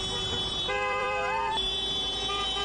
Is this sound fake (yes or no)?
yes